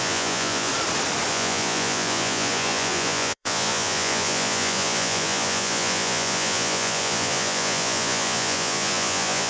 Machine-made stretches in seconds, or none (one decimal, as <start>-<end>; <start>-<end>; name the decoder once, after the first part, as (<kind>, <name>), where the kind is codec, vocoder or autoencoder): 0.0-0.7 (vocoder, Vocos); 1.3-9.5